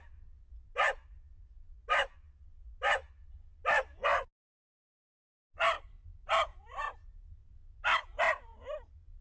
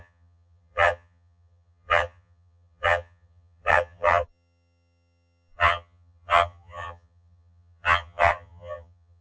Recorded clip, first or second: first